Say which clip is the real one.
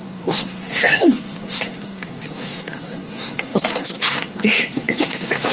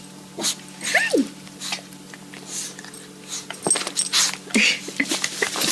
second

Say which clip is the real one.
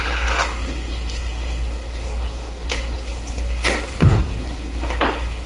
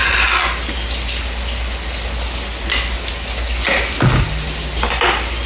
second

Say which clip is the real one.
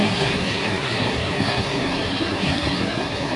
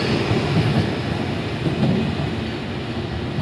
second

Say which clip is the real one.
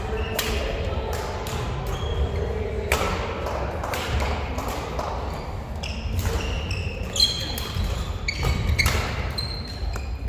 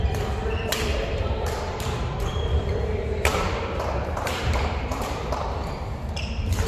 first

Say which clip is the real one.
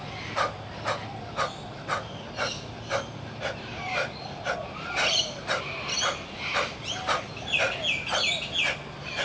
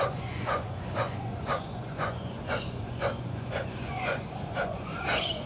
first